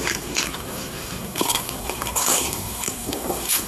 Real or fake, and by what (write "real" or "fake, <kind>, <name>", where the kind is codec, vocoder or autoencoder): fake, codec, SNAC